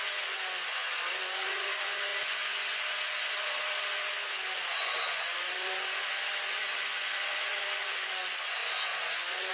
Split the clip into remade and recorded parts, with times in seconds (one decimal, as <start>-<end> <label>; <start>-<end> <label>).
0.0-9.5 remade